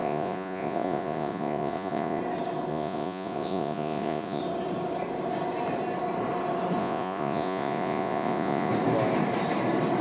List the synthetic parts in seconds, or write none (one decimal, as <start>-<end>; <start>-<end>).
0.0-2.2; 2.7-4.4; 6.8-8.7